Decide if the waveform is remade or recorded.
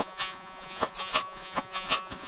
remade